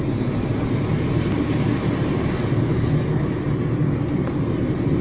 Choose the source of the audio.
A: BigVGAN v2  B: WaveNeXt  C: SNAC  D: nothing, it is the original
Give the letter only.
D